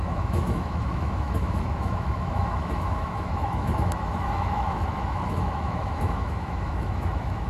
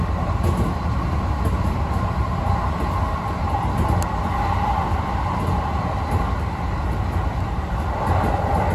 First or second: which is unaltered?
second